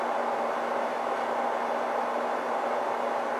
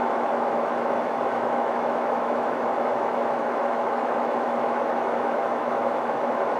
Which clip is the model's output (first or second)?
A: second